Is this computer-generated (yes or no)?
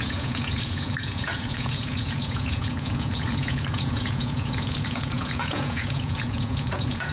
yes